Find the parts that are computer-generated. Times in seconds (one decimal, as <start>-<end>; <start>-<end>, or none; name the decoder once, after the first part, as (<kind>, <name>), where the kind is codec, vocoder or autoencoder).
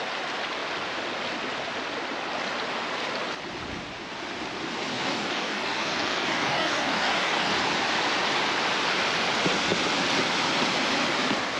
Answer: 4.9-7.5 (codec, DAC)